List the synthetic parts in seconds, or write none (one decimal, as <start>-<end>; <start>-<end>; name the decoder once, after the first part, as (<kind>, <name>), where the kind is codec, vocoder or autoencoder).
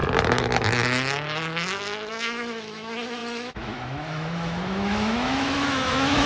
2.1-6.3 (autoencoder, DAC-VAE)